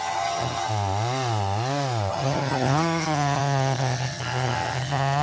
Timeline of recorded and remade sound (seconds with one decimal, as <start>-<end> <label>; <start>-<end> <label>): 0.0-0.7 remade; 0.7-2.1 recorded; 2.1-5.2 remade